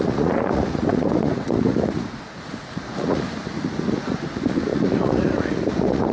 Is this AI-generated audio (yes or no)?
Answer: yes